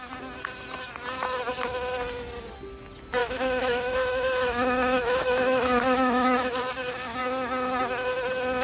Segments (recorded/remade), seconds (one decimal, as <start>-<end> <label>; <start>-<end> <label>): 0.0-3.2 recorded; 3.2-6.6 remade; 6.6-8.6 recorded